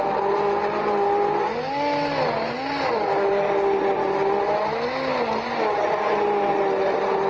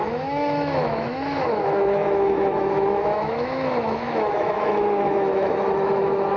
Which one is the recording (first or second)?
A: first